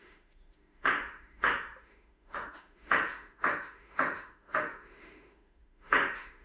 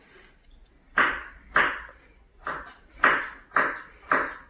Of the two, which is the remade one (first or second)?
first